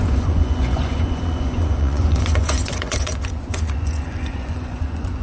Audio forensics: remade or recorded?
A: remade